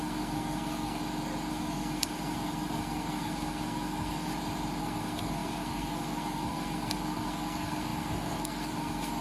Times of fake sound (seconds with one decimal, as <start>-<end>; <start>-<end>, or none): 0.0-1.0; 1.5-4.3; 4.8-9.2